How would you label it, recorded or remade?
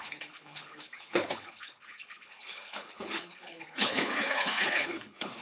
remade